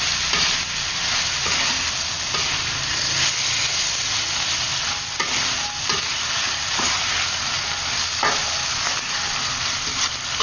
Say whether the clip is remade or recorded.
recorded